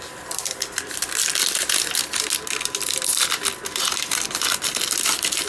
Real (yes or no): yes